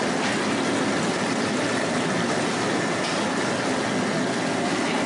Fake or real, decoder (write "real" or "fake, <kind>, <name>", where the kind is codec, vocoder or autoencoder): real